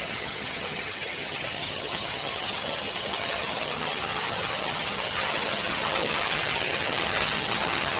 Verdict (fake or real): fake